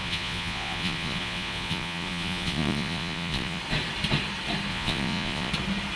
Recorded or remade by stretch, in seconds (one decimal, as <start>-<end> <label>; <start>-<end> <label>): 0.0-3.6 remade; 3.6-4.7 recorded; 4.7-5.5 remade; 5.5-6.0 recorded